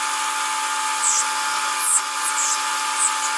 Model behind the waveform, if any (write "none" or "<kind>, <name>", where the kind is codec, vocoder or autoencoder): none